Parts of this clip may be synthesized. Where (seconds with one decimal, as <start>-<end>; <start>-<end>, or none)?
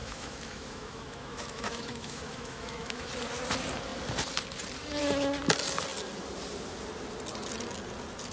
0.0-3.1